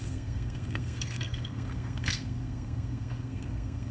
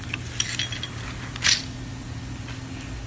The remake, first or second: first